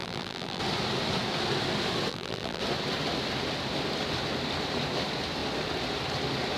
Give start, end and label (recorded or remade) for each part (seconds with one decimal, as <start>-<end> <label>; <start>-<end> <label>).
0.0-0.6 remade; 0.6-2.1 recorded; 2.1-2.6 remade; 2.6-6.6 recorded